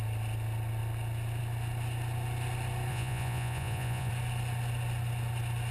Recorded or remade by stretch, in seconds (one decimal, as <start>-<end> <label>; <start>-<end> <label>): 0.0-2.9 recorded; 2.9-4.1 remade; 4.1-5.7 recorded